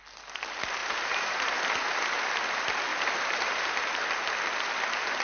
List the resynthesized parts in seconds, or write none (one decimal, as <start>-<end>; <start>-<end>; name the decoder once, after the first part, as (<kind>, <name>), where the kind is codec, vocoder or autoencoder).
0.8-1.5 (vocoder, BigVGAN v2); 2.9-3.9